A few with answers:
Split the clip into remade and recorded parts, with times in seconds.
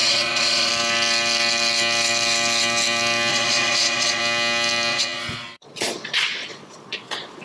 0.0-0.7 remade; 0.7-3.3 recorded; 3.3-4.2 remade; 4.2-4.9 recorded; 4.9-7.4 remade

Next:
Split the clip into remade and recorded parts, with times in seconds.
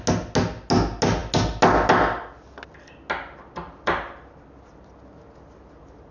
0.0-6.1 recorded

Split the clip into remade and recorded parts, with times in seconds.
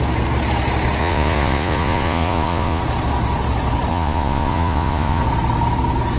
0.0-1.0 recorded; 1.0-2.8 remade; 2.8-3.9 recorded; 3.9-5.2 remade; 5.2-6.2 recorded